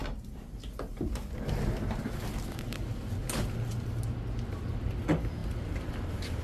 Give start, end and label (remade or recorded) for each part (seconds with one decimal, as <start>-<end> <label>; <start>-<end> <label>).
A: 0.0-6.4 recorded

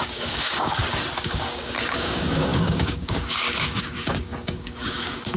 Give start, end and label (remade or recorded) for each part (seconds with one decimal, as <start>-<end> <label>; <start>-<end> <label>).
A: 0.0-0.8 remade; 0.8-1.3 recorded; 1.3-5.4 remade

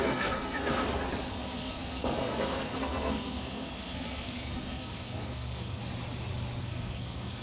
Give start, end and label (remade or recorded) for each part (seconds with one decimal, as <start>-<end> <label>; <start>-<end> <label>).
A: 0.0-0.8 remade; 0.8-1.3 recorded; 1.3-5.8 remade; 5.8-6.6 recorded; 6.6-7.4 remade

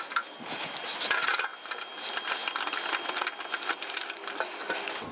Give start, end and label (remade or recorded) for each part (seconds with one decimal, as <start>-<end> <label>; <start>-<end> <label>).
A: 0.0-5.1 recorded

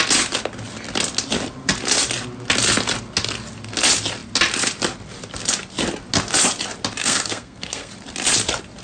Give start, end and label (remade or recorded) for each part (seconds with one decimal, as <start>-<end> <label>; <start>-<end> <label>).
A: 0.0-7.0 recorded; 7.0-7.9 remade; 7.9-8.8 recorded

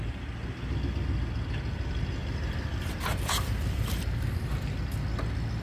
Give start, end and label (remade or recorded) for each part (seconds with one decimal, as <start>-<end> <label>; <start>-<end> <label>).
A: 0.0-2.2 recorded; 2.2-4.6 remade; 4.6-5.6 recorded